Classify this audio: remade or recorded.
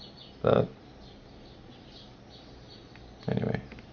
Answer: recorded